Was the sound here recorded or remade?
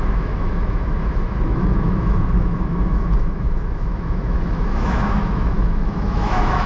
remade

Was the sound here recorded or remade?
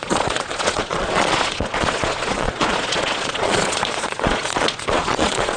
remade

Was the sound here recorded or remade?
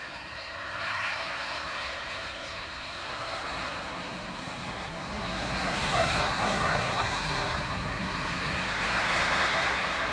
remade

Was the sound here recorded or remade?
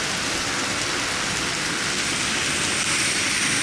recorded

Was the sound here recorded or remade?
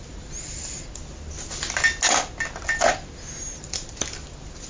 recorded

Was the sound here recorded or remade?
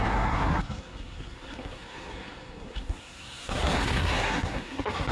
remade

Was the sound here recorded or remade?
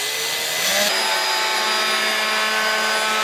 recorded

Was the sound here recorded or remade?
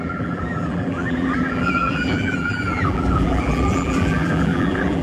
remade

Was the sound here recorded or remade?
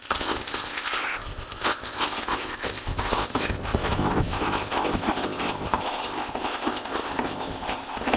remade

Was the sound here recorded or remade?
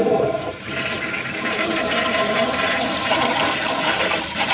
remade